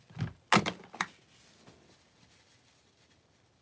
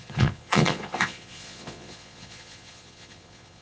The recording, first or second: first